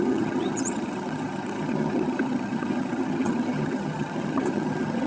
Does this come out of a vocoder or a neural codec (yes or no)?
yes